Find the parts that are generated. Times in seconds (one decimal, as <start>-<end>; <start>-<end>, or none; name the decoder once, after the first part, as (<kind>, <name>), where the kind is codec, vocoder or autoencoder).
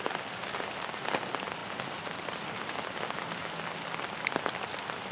none